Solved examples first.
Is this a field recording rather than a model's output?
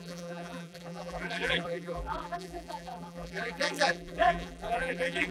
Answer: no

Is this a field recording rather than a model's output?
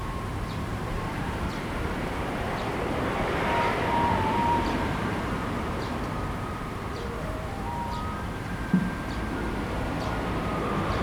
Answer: no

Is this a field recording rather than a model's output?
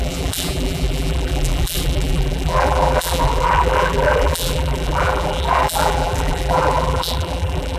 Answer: no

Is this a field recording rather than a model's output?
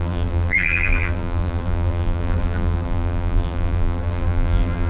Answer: no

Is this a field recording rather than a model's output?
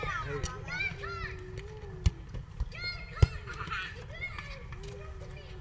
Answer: yes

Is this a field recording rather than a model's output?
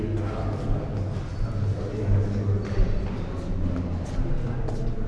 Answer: yes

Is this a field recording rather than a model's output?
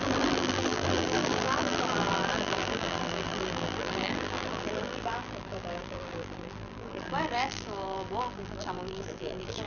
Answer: no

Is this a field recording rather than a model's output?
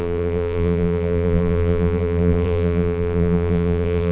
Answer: no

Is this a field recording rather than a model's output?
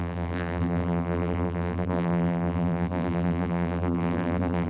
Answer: no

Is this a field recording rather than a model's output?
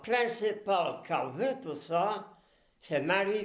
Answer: yes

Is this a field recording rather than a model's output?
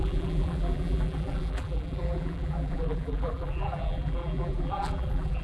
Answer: no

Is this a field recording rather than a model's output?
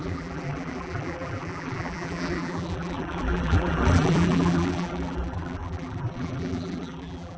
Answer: no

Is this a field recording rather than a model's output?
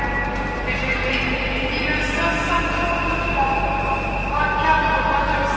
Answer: yes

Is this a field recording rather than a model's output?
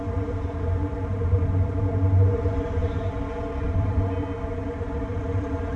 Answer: no